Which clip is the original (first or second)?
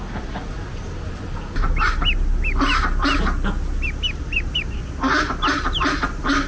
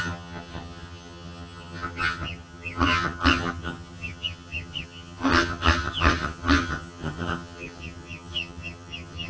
first